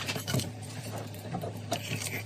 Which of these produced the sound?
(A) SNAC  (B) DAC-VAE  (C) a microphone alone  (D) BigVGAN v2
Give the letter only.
D